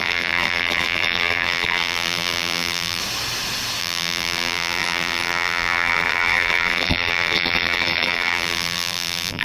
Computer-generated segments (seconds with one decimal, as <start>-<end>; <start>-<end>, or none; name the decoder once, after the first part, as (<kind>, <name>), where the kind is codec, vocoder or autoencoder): 0.0-3.0 (vocoder, BigVGAN v2); 3.8-9.4